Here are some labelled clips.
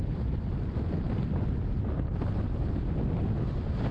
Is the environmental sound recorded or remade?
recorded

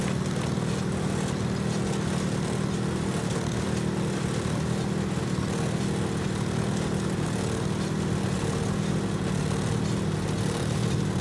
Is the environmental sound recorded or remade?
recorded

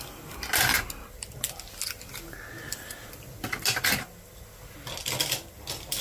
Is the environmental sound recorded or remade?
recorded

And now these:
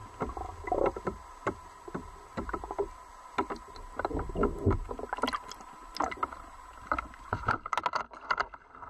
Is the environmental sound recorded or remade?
recorded